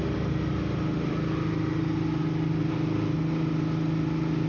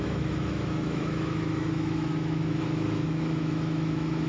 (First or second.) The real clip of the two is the first